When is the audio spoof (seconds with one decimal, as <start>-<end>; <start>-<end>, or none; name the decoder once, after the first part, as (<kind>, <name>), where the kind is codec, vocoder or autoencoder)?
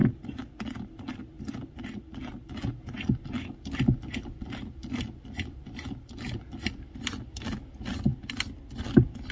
none